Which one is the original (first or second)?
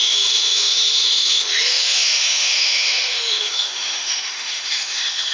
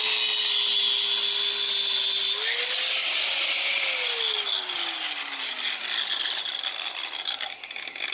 second